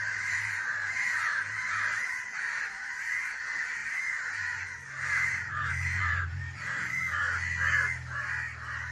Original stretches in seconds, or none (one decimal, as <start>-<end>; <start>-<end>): 7.2-8.9